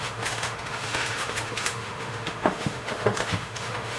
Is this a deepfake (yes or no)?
yes